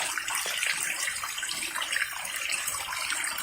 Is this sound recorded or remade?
remade